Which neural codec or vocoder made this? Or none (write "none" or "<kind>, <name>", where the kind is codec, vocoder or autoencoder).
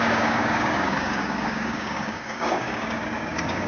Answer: codec, DAC